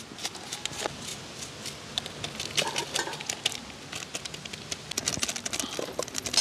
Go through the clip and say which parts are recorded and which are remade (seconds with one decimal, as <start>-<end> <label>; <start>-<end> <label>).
0.0-1.1 recorded; 1.1-2.2 remade; 2.2-6.4 recorded